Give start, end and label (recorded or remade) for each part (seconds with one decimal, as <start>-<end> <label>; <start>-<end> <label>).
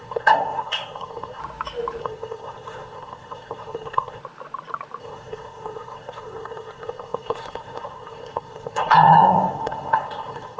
0.0-1.4 remade; 1.4-2.0 recorded; 2.0-4.2 remade; 4.2-5.0 recorded; 5.0-10.6 remade